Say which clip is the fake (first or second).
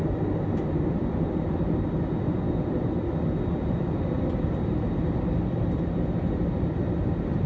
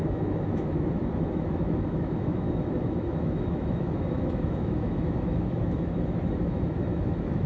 second